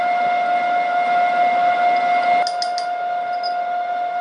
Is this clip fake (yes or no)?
no